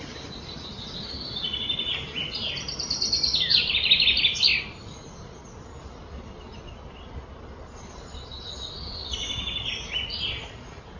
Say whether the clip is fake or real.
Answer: real